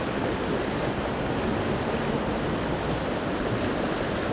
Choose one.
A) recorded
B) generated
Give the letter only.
A